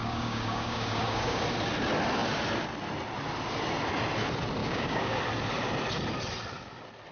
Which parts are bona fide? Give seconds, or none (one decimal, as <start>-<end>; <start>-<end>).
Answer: 1.4-4.6; 5.2-7.1